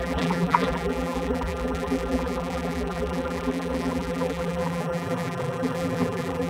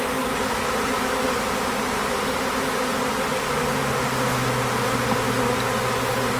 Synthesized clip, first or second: first